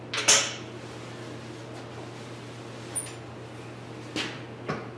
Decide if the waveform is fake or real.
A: real